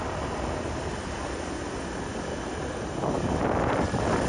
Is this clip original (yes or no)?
yes